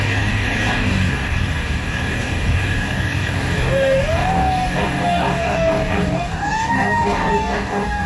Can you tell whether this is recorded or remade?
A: remade